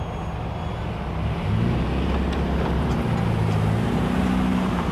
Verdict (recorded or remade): recorded